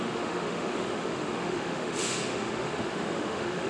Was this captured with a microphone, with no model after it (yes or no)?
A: no